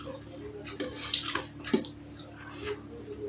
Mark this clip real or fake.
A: real